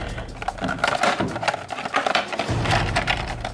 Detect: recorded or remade recorded